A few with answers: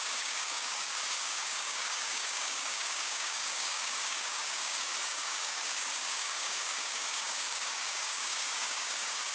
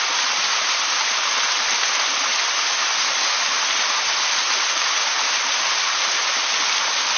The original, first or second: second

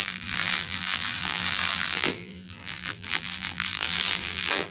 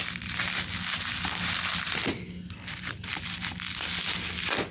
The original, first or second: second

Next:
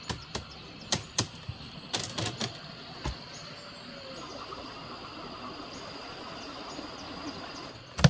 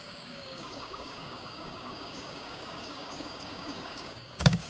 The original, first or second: first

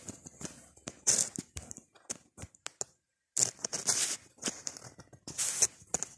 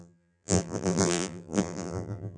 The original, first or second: first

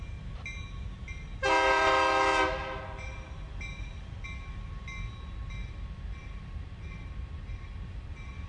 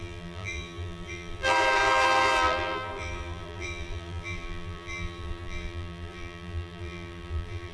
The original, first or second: first